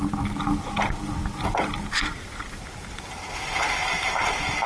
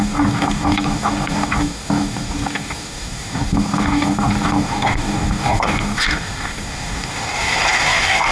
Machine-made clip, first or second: second